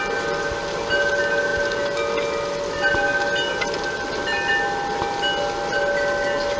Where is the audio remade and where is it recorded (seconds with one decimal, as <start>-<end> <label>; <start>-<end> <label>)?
0.0-6.6 recorded